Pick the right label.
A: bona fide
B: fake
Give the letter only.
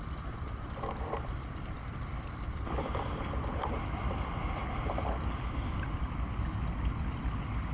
A